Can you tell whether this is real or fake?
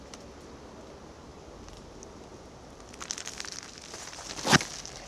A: real